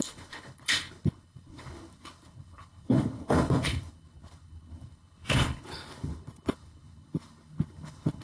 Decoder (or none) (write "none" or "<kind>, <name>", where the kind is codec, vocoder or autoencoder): codec, HILCodec